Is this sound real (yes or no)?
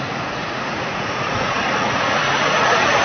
no